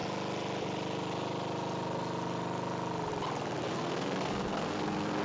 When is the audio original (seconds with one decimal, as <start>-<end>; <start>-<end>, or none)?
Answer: 0.0-3.7